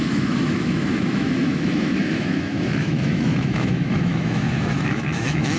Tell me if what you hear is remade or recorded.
remade